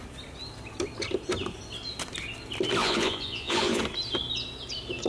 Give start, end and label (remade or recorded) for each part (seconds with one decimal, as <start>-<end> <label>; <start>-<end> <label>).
0.0-2.8 recorded; 2.8-3.8 remade; 3.8-5.1 recorded